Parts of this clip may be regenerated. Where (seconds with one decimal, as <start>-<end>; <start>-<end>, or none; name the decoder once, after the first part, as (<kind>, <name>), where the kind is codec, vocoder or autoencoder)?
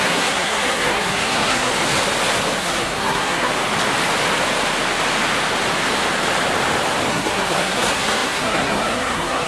0.0-1.7 (codec, SNAC); 2.6-3.5; 7.1-9.5